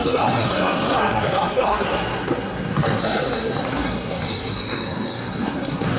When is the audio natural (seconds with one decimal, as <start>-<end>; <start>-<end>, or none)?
none